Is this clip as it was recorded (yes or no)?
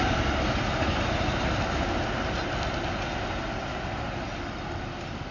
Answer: yes